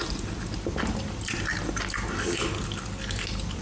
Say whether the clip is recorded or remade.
recorded